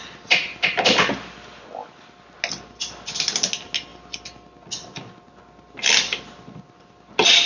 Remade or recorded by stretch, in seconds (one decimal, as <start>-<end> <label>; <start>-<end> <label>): 0.0-7.5 recorded